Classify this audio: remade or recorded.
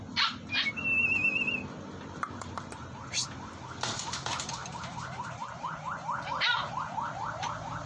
remade